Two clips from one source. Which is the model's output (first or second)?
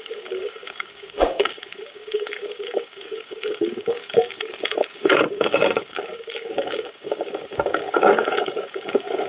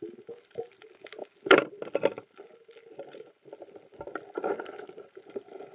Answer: first